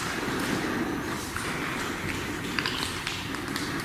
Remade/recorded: recorded